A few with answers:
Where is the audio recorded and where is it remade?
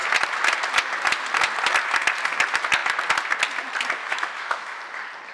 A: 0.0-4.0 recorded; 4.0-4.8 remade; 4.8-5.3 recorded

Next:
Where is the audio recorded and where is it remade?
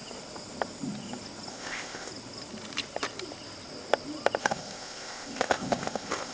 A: 0.0-1.5 recorded; 1.5-2.1 remade; 2.1-4.4 recorded; 4.4-6.3 remade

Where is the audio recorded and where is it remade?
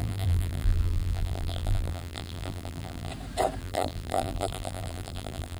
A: 0.0-3.1 remade; 3.1-3.6 recorded; 3.6-5.6 remade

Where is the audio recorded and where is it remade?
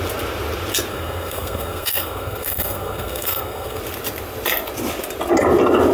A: 0.0-0.9 recorded; 0.9-3.8 remade; 3.8-5.9 recorded